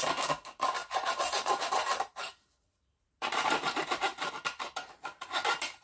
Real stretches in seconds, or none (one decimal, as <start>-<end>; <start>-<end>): 0.0-0.8; 4.3-5.8